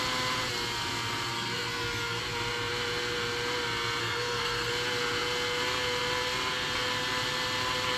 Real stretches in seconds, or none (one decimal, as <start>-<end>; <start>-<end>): 0.0-1.3; 2.2-4.0; 4.7-8.0